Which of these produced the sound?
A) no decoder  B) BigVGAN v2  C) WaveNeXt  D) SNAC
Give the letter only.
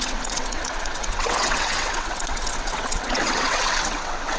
C